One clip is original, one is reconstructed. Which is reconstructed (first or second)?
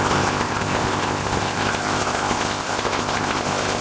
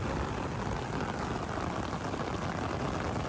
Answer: first